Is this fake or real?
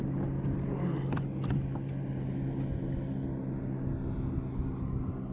real